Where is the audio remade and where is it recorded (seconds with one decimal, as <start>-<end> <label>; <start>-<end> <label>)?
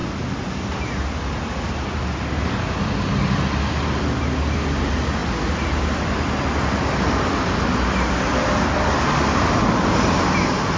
0.0-10.8 recorded